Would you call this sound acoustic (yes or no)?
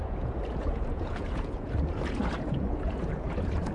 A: no